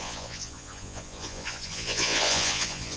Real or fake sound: fake